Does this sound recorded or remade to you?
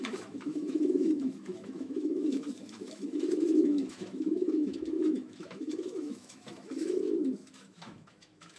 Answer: remade